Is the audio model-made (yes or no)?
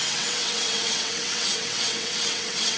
yes